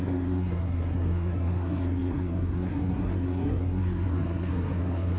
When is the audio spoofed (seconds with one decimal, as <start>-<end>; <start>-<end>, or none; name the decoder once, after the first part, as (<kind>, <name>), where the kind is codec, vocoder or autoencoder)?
0.0-5.2 (codec, SNAC)